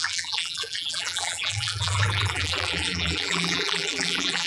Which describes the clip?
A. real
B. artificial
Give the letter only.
B